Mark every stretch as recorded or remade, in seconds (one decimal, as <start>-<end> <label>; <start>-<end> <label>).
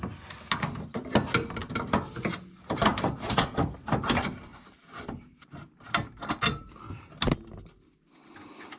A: 0.0-1.6 recorded; 1.6-2.2 remade; 2.2-2.9 recorded; 2.9-3.4 remade; 3.4-4.5 recorded; 4.5-6.3 remade; 6.3-8.8 recorded